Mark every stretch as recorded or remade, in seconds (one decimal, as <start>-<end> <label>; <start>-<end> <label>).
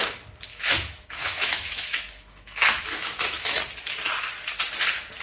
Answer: 0.0-0.5 recorded; 0.5-3.6 remade; 3.6-5.2 recorded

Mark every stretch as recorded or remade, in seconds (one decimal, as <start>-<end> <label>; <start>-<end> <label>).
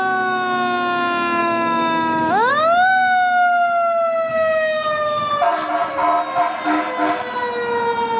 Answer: 0.0-1.4 recorded; 1.4-2.5 remade; 2.5-4.3 recorded; 4.3-5.3 remade; 5.3-8.2 recorded